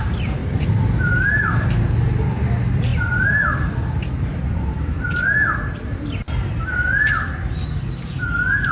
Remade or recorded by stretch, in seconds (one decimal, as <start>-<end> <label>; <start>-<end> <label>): 0.0-2.9 recorded; 2.9-5.1 remade; 5.1-8.7 recorded